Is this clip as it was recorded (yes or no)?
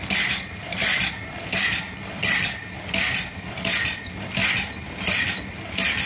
yes